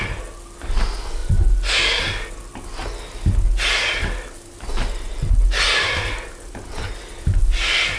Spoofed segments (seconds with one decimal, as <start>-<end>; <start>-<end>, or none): none